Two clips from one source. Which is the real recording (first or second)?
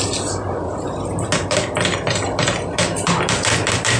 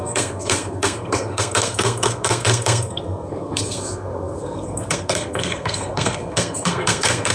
first